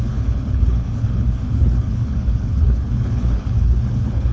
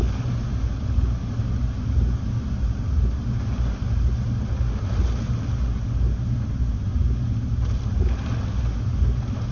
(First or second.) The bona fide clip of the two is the second